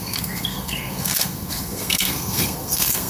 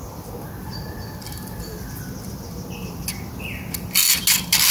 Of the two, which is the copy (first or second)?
first